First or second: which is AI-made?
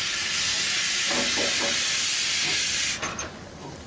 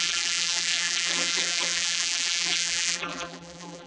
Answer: second